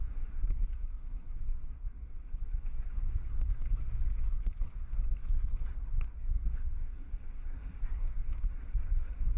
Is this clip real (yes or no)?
no